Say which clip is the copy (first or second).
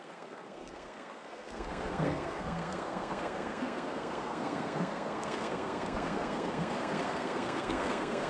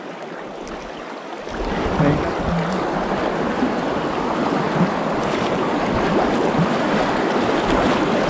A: first